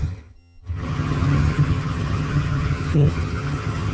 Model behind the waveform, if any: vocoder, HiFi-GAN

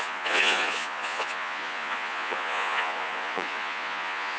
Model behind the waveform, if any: vocoder, Vocos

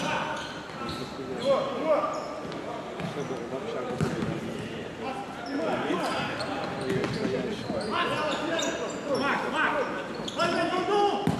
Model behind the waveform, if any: none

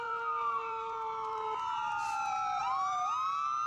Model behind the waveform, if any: vocoder, BigVGAN v2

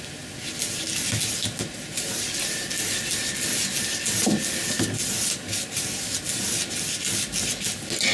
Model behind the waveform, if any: none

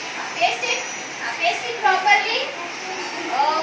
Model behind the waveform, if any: none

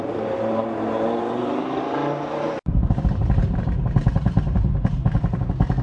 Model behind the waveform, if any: vocoder, BigVGAN v2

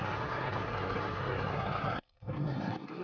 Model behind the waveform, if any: codec, SNAC